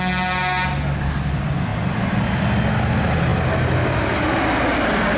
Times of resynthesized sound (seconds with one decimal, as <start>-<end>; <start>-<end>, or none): none